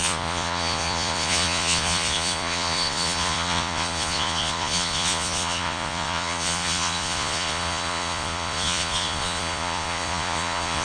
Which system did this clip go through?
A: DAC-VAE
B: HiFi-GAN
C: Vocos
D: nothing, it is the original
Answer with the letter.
C